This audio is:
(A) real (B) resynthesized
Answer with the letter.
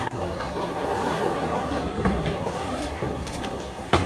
B